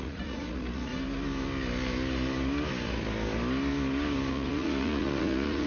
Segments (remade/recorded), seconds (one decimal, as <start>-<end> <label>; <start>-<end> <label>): 0.0-0.9 remade; 0.9-4.3 recorded; 4.3-5.7 remade